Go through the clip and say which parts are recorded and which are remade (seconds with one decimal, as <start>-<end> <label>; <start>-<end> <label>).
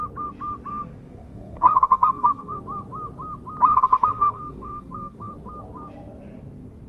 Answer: 0.0-0.7 recorded; 0.7-2.6 remade; 2.6-3.7 recorded; 3.7-5.3 remade; 5.3-6.9 recorded